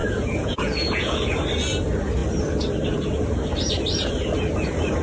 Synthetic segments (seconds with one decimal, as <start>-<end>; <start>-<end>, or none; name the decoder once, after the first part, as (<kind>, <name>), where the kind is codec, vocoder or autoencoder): 0.0-1.4 (vocoder, Vocos)